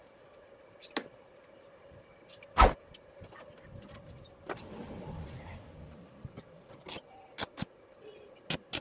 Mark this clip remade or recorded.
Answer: recorded